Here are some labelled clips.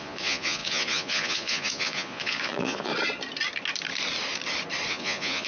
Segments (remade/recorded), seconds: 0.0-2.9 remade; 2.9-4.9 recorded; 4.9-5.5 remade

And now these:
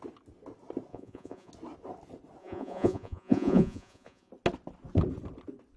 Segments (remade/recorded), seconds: 0.0-0.9 recorded; 0.9-1.5 remade; 1.5-2.4 recorded; 2.4-4.3 remade; 4.3-5.8 recorded

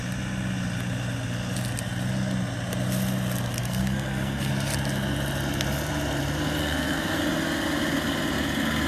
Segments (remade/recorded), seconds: 0.0-3.6 recorded; 3.6-4.5 remade; 4.5-6.6 recorded; 6.6-7.2 remade; 7.2-8.9 recorded